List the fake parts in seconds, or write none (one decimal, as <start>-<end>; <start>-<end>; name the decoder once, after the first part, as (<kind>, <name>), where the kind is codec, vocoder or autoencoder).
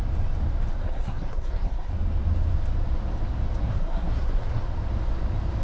0.8-1.9 (codec, SNAC); 3.6-4.6